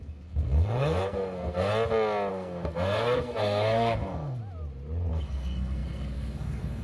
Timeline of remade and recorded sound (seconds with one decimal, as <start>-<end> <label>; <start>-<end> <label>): 0.0-1.7 remade; 1.7-2.3 recorded; 2.3-4.4 remade; 4.4-5.1 recorded; 5.1-6.8 remade